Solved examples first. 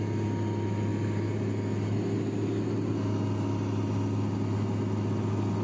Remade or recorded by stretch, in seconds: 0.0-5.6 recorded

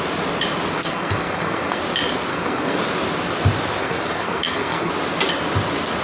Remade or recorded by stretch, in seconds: 0.0-0.7 recorded; 0.7-1.8 remade; 1.8-2.3 recorded; 2.3-2.8 remade; 2.8-3.8 recorded; 3.8-4.9 remade; 4.9-6.0 recorded

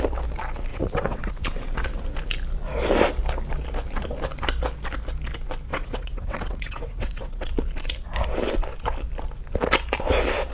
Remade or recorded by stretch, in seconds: 0.0-0.7 recorded; 0.7-1.3 remade; 1.3-5.7 recorded; 5.7-7.5 remade; 7.5-10.5 recorded

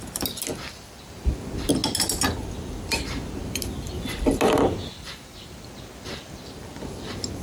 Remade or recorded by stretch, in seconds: 0.0-7.4 recorded